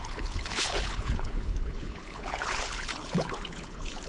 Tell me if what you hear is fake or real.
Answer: fake